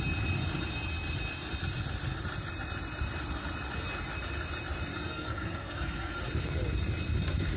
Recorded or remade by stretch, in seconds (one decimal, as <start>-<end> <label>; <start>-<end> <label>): 0.0-4.9 recorded; 4.9-6.2 remade; 6.2-7.6 recorded